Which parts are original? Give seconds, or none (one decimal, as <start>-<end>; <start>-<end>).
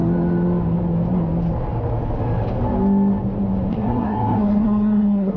0.0-3.7